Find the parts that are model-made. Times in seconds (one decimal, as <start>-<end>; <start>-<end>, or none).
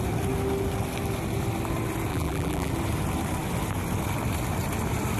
2.1-2.7